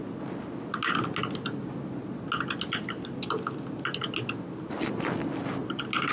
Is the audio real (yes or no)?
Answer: yes